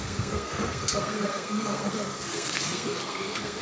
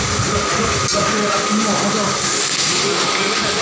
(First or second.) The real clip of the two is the second